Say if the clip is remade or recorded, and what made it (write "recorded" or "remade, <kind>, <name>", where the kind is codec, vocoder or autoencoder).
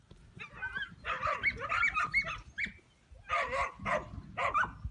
recorded